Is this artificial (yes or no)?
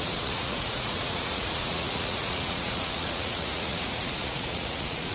yes